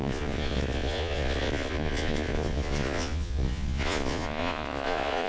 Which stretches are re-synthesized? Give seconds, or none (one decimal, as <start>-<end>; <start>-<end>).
0.0-5.3